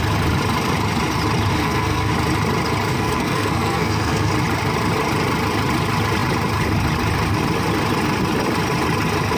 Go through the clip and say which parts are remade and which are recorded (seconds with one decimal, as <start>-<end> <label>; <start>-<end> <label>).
0.0-1.5 recorded; 1.5-2.1 remade; 2.1-2.9 recorded; 2.9-4.3 remade; 4.3-9.4 recorded